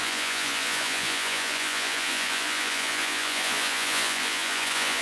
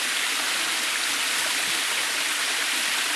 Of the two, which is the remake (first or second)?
first